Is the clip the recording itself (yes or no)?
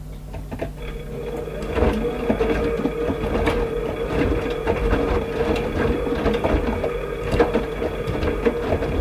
yes